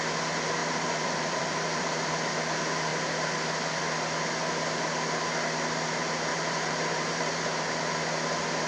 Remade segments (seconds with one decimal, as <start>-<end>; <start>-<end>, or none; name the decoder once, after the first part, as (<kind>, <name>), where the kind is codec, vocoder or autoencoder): 0.6-2.1 (vocoder, BigVGAN v2); 6.3-7.4